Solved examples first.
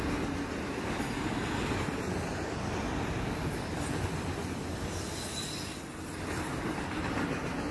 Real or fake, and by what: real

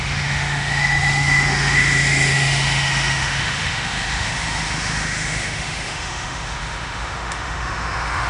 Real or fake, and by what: fake, autoencoder, DAC-VAE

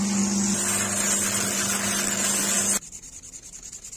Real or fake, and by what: real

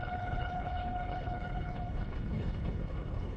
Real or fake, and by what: fake, codec, HILCodec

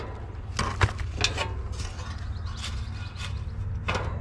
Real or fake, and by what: real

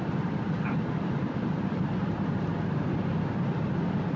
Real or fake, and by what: real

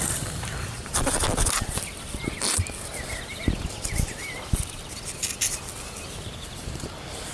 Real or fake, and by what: real